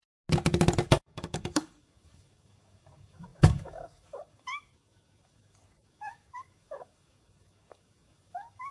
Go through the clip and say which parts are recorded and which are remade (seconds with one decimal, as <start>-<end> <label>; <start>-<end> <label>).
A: 0.0-0.9 recorded; 0.9-8.7 remade